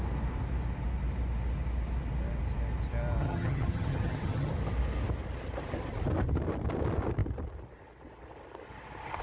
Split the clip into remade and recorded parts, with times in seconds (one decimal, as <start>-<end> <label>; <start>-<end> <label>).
0.0-3.2 recorded; 3.2-4.5 remade; 4.5-9.2 recorded